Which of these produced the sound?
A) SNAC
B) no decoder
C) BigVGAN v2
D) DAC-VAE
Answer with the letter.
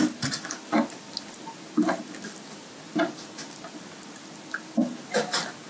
B